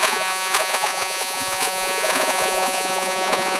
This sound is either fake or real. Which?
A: fake